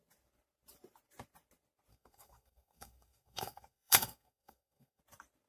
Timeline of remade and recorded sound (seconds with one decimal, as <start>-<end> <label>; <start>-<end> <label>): 0.0-1.9 recorded; 1.9-5.0 remade; 5.0-5.5 recorded